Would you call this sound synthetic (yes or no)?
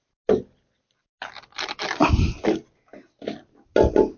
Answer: no